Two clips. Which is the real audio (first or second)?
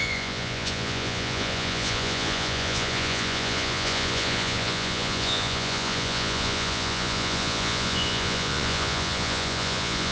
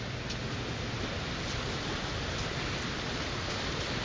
second